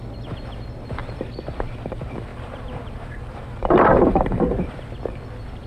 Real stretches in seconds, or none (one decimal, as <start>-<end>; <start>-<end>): 0.0-2.3; 4.7-5.7